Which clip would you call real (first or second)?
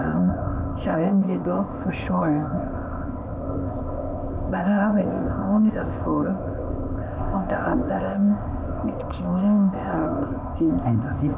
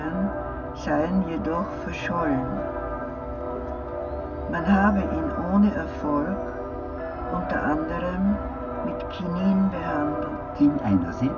second